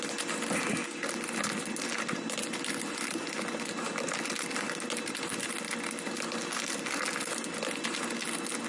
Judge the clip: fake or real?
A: real